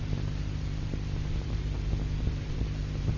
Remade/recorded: remade